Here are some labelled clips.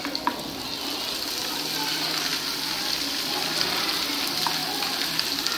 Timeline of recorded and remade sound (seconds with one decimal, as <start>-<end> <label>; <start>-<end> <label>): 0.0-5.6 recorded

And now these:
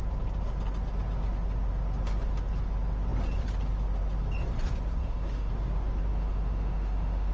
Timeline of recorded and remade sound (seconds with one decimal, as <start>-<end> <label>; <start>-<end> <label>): 0.0-5.0 recorded; 5.0-5.5 remade; 5.5-6.1 recorded; 6.1-7.3 remade

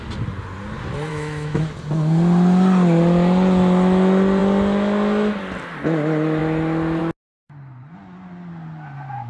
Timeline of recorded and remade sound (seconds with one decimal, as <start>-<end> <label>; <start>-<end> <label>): 0.0-1.1 recorded; 1.1-1.6 remade; 1.6-9.3 recorded